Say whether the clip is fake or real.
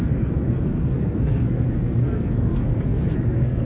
fake